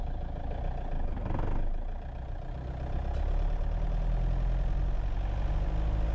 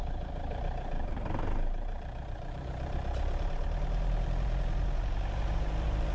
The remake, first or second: second